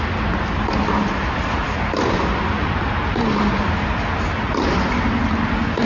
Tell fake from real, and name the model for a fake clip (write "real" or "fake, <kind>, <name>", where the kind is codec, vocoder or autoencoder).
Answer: real